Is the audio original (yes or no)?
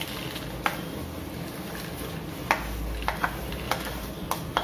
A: yes